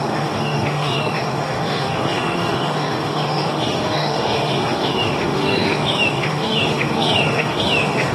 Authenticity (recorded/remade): remade